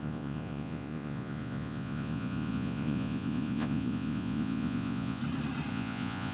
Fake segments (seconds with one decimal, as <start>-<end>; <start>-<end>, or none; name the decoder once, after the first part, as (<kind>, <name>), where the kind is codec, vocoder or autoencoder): 0.0-5.2 (vocoder, Vocos); 5.7-6.3